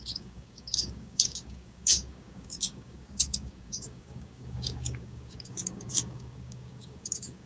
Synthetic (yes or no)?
yes